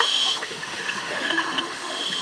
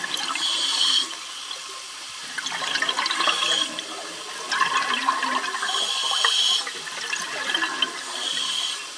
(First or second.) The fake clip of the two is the first